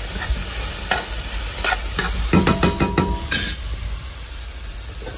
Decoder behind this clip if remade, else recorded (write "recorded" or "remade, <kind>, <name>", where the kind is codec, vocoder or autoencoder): recorded